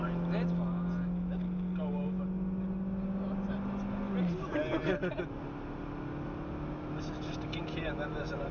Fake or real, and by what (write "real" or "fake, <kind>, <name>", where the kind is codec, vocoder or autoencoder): real